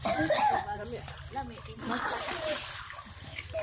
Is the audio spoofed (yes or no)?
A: no